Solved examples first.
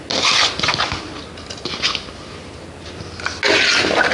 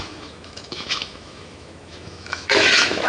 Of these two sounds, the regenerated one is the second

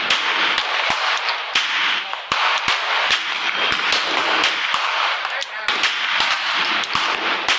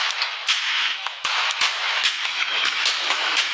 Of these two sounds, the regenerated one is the second